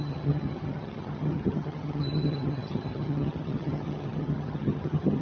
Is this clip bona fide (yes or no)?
no